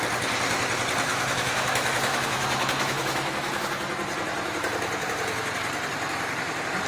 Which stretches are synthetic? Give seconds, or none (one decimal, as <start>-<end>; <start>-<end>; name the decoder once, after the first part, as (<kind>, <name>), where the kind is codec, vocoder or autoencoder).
1.1-3.6 (autoencoder, DAC-VAE)